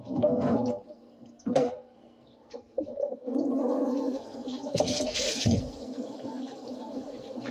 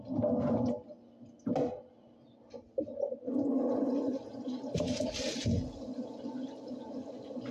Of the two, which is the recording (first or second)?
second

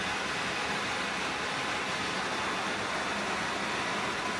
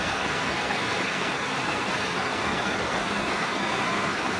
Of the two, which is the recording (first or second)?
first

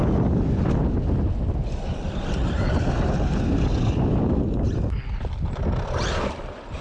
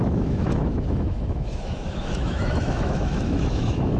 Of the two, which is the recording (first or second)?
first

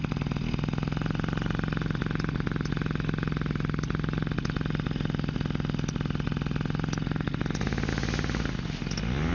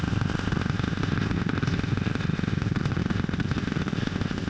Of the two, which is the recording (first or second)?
first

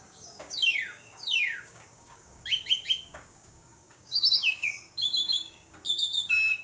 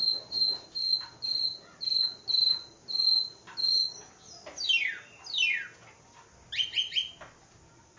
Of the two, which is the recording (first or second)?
second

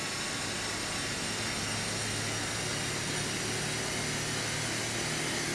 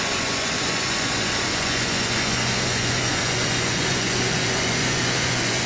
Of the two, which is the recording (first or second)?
first